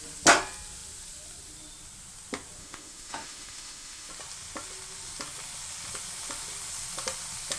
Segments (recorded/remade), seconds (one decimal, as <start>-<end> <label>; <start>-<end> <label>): 0.0-2.6 recorded; 2.6-4.1 remade; 4.1-7.6 recorded